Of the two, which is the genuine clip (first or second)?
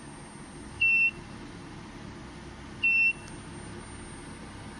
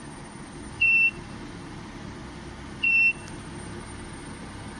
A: first